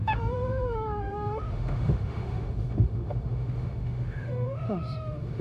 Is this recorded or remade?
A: remade